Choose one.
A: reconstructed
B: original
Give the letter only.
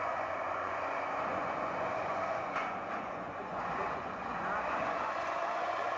A